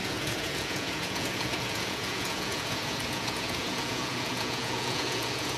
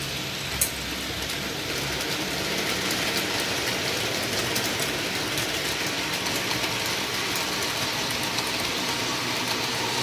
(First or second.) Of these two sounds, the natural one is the second